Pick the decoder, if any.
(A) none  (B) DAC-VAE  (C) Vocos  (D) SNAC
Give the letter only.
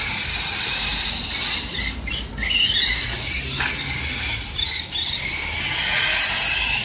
A